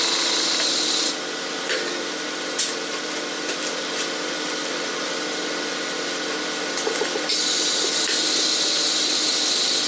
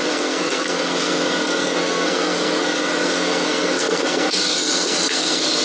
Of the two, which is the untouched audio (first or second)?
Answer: first